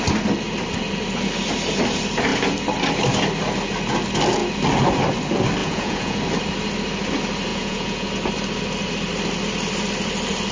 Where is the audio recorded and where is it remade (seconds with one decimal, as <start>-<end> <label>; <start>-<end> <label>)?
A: 0.0-5.6 recorded; 5.6-6.2 remade; 6.2-7.5 recorded; 7.5-8.1 remade; 8.1-10.5 recorded